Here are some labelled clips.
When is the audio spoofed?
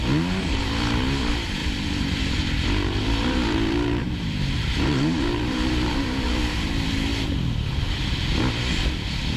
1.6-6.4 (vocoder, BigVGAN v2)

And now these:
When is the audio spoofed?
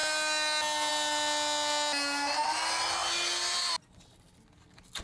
none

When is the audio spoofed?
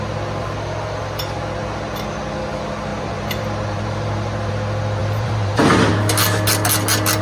2.9-4.5 (vocoder, BigVGAN v2); 5.0-5.9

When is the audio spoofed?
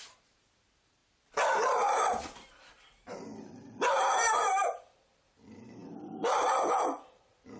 0.0-1.0 (vocoder, BigVGAN v2); 2.5-3.3; 3.9-7.6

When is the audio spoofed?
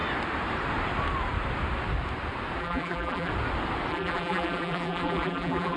2.6-3.3 (vocoder, BigVGAN v2); 3.9-5.8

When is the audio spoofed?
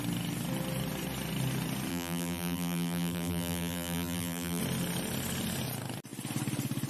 1.9-4.6 (vocoder, BigVGAN v2)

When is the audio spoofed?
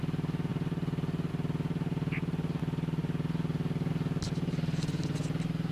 none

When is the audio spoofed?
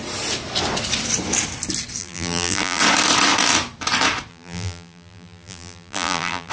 2.0-2.8 (vocoder, BigVGAN v2); 4.3-6.5